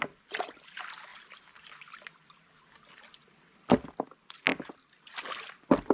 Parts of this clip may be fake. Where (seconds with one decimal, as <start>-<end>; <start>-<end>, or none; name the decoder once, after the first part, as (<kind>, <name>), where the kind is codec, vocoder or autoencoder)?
none